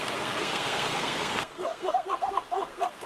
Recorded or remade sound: remade